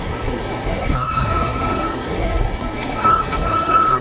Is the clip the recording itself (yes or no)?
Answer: no